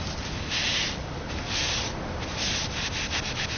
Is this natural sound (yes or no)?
yes